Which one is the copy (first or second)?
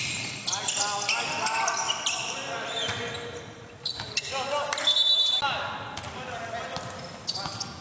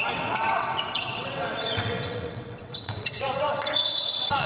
second